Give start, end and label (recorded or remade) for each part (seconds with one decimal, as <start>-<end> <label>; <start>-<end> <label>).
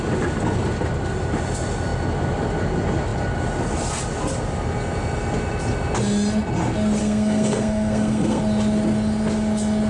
0.0-7.0 recorded; 7.0-8.4 remade; 8.4-9.9 recorded